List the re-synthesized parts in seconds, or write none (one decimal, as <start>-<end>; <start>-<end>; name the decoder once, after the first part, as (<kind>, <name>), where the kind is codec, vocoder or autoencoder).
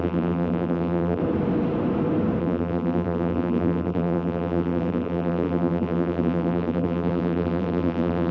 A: 0.0-1.2 (vocoder, BigVGAN v2); 2.4-8.3